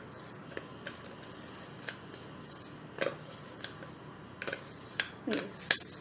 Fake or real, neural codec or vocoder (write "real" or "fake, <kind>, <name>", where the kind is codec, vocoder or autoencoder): real